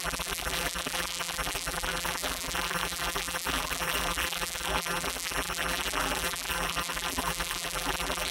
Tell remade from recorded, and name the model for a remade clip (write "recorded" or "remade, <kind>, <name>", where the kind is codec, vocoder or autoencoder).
remade, vocoder, BigVGAN v2